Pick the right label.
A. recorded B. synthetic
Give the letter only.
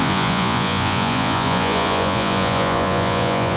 B